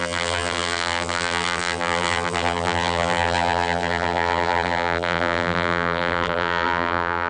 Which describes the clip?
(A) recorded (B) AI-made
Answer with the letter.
B